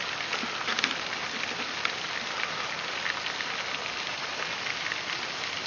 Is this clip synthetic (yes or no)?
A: no